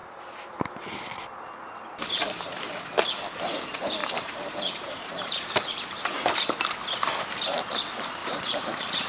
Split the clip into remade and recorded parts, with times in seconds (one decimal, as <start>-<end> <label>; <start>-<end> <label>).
0.0-1.1 remade; 1.1-4.0 recorded; 4.0-6.5 remade; 6.5-8.2 recorded; 8.2-9.1 remade